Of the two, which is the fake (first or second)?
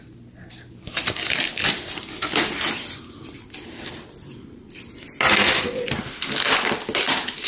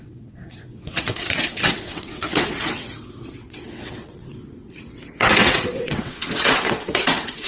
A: second